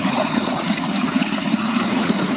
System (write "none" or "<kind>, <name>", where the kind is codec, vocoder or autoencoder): vocoder, Vocos